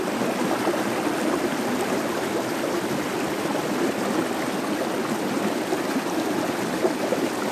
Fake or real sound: real